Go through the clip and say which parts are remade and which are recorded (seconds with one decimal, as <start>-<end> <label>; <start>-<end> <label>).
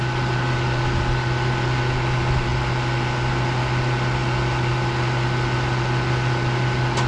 0.0-7.1 recorded